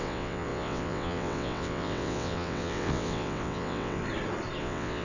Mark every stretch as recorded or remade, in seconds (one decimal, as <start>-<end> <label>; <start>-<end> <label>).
0.0-4.0 remade; 4.0-4.6 recorded; 4.6-5.0 remade